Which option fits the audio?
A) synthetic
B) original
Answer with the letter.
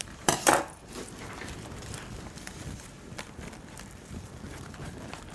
A